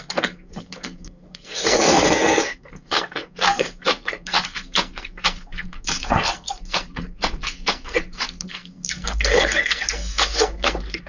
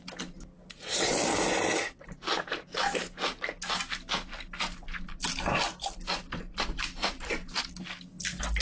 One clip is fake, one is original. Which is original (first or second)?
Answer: second